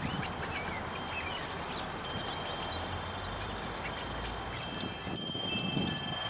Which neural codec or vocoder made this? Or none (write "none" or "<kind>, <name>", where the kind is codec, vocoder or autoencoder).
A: none